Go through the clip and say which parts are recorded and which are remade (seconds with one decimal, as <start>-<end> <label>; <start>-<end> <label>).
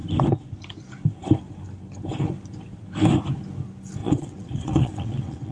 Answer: 0.0-4.0 recorded; 4.0-5.5 remade